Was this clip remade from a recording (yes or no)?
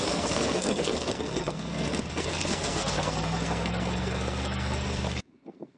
yes